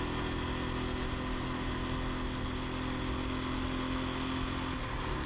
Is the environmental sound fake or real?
real